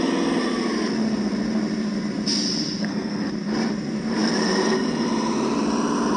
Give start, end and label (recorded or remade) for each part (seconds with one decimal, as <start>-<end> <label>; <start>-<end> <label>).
0.0-2.8 recorded; 2.8-3.3 remade; 3.3-6.2 recorded